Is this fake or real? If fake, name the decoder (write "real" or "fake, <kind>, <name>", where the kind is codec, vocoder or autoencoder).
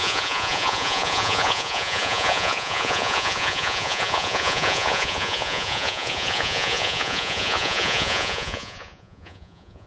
fake, vocoder, Vocos